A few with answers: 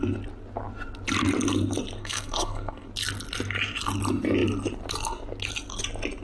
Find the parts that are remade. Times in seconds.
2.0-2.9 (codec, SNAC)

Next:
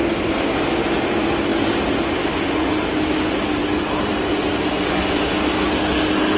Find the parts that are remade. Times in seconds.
none

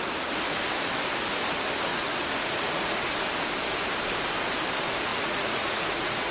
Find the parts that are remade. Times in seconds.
1.9-3.0 (vocoder, Vocos); 5.1-6.3

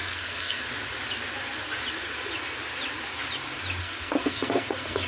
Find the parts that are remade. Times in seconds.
0.0-0.7 (codec, SNAC); 3.8-5.1

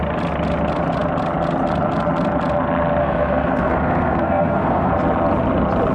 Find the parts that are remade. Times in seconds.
3.0-4.9 (codec, SNAC)

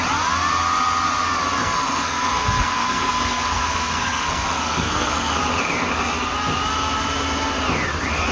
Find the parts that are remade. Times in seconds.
1.6-5.4 (codec, SNAC)